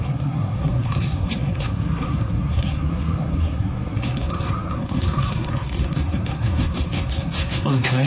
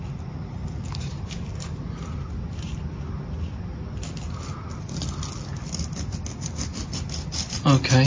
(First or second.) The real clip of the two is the second